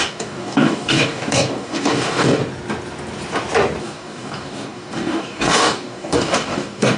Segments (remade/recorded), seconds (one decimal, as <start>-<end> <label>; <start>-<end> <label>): 0.0-2.4 remade; 2.4-3.8 recorded; 3.8-7.0 remade